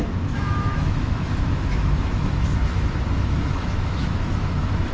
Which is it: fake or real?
fake